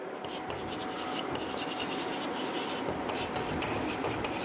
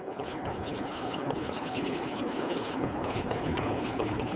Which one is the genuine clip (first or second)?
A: first